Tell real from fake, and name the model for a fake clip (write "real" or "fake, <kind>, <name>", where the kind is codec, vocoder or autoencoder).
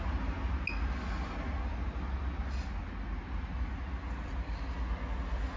real